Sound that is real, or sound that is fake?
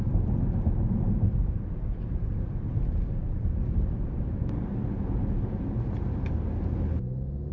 real